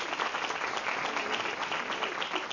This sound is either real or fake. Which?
real